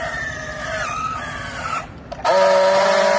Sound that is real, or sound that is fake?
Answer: fake